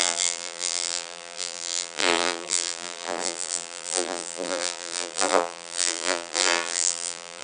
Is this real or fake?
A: fake